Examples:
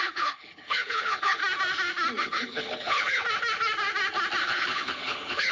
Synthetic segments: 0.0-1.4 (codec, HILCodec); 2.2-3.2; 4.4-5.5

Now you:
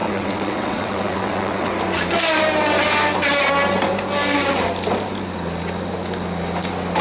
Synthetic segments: 0.0-1.7 (vocoder, WaveNeXt)